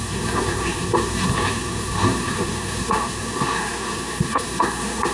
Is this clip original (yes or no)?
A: no